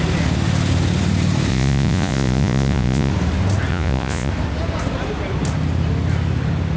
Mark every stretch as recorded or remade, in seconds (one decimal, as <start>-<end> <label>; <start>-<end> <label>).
0.0-1.5 recorded; 1.5-3.1 remade; 3.1-3.7 recorded; 3.7-4.3 remade; 4.3-6.8 recorded